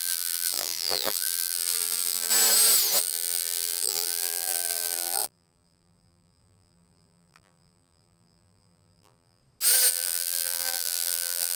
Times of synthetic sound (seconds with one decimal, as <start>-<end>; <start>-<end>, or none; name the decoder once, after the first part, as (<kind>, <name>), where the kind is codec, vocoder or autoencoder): 0.0-2.3 (vocoder, BigVGAN v2); 3.0-9.4; 9.9-11.6